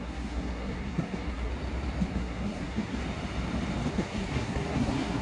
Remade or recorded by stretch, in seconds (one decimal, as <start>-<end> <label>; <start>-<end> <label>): 0.0-1.5 remade; 1.5-2.1 recorded; 2.1-3.0 remade; 3.0-3.9 recorded; 3.9-5.2 remade

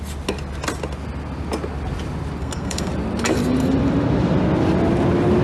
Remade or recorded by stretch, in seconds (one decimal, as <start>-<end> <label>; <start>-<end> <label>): 0.0-2.4 recorded; 2.4-2.9 remade; 2.9-5.4 recorded

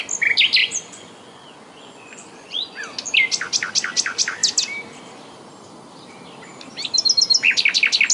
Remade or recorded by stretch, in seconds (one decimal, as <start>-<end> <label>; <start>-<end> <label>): 0.0-0.6 recorded; 0.6-2.8 remade; 2.8-8.1 recorded

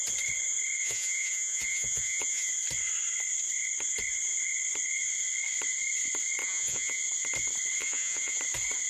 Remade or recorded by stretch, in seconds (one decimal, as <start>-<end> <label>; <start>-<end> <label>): 0.0-0.8 recorded; 0.8-2.5 remade; 2.5-6.4 recorded; 6.4-7.0 remade; 7.0-7.8 recorded; 7.8-8.4 remade; 8.4-8.9 recorded